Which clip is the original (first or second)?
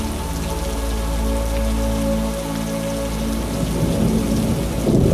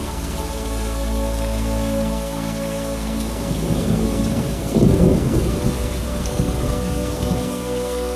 first